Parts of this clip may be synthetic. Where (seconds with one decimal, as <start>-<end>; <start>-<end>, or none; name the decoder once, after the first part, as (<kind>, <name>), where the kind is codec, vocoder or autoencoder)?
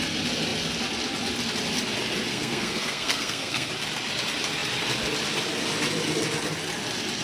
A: 2.3-3.7 (codec, SNAC)